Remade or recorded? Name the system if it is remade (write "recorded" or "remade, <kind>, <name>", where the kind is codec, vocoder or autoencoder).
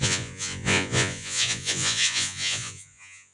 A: remade, vocoder, Vocos